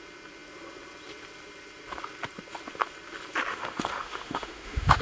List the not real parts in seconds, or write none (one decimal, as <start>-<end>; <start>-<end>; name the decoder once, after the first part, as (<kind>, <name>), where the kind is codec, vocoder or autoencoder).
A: 3.5-5.0 (autoencoder, DAC-VAE)

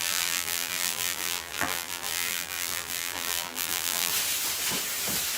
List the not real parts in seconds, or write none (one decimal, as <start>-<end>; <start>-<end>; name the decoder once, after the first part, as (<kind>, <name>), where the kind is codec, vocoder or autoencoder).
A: 0.0-4.1 (vocoder, BigVGAN v2)

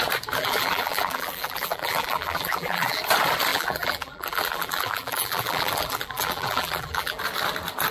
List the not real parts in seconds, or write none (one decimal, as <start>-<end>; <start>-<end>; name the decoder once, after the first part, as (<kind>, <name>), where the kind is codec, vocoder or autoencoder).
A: 0.4-3.0 (vocoder, BigVGAN v2); 3.5-7.2

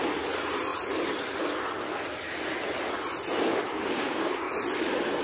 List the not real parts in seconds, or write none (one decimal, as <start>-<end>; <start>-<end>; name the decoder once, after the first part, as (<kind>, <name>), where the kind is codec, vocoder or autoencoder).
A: 3.5-4.5 (codec, DAC)

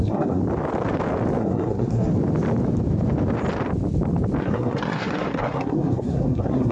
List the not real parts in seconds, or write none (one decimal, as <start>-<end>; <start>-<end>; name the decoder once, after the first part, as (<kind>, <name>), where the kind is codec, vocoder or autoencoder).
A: 0.0-0.4 (codec, SNAC); 1.4-2.1; 4.4-6.7